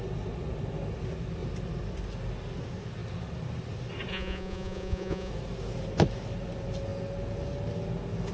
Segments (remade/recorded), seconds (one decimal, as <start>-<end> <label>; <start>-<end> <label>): 0.0-4.1 recorded; 4.1-5.3 remade; 5.3-8.3 recorded